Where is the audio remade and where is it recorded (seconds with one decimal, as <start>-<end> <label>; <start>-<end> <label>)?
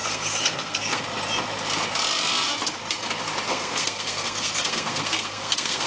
0.0-1.0 remade; 1.0-3.5 recorded; 3.5-5.9 remade